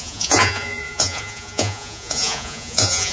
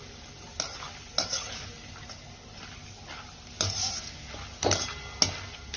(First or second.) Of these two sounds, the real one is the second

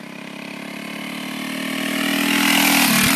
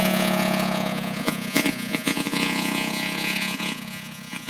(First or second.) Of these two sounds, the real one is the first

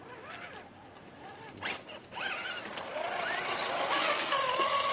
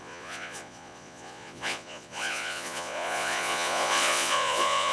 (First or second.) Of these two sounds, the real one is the first